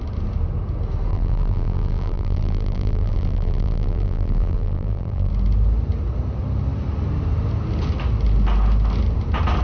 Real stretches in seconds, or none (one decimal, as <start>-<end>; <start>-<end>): 0.0-1.1; 5.3-9.6